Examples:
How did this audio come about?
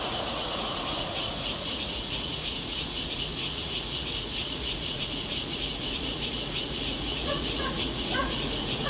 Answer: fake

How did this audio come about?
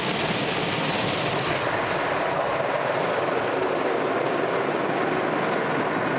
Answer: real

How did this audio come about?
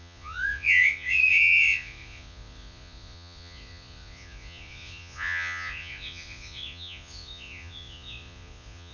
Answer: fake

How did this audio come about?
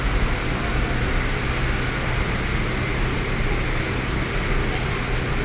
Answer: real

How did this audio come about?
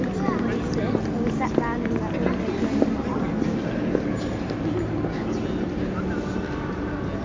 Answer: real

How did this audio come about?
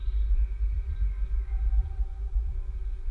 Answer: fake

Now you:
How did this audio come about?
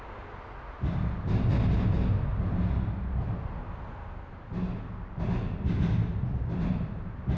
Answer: real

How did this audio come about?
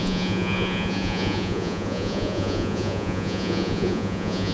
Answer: fake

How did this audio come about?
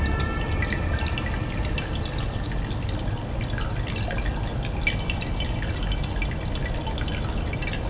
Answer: real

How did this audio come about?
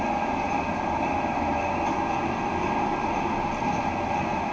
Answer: real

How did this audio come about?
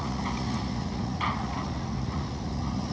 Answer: fake